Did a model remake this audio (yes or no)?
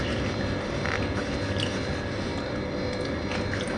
no